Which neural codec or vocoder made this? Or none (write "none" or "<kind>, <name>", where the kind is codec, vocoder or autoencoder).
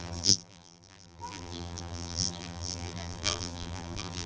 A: vocoder, BigVGAN v2